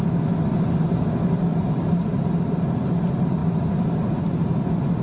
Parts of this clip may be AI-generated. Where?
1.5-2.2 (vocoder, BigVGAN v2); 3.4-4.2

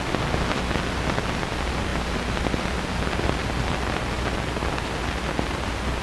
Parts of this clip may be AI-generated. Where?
none

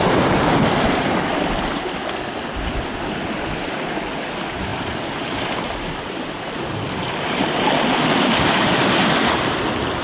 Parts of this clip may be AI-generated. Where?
none

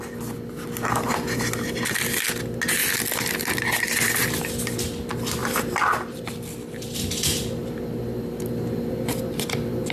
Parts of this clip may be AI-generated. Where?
none